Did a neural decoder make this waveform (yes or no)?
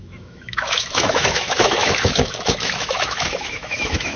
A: yes